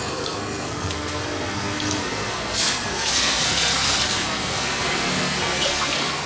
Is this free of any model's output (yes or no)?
no